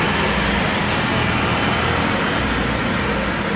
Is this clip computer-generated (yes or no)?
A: no